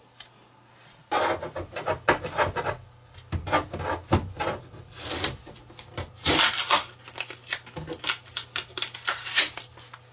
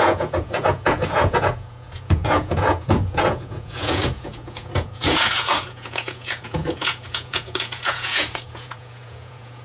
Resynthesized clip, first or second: second